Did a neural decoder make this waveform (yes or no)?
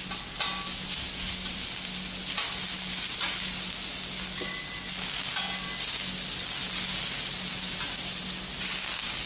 no